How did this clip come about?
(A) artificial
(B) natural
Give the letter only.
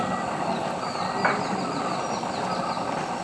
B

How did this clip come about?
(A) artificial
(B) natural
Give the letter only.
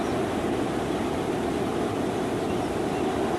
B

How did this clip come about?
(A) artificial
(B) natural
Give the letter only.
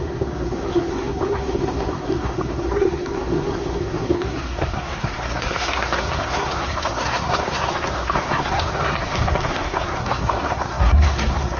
A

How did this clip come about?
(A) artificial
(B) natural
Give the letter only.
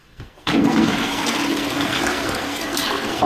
A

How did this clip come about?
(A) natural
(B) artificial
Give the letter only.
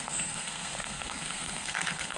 B